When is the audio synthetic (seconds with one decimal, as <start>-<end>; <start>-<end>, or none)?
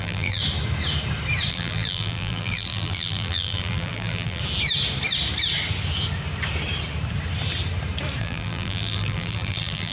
0.0-0.4; 1.5-4.4; 8.2-9.9